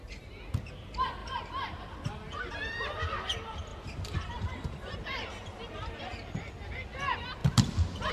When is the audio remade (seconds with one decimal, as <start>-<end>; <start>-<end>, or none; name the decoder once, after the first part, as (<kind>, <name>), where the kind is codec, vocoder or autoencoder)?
1.2-2.5 (vocoder, BigVGAN v2); 3.7-6.0